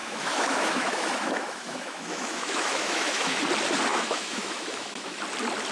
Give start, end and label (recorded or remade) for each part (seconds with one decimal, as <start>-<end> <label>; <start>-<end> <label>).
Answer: 0.0-3.4 remade; 3.4-3.9 recorded; 3.9-5.2 remade; 5.2-5.7 recorded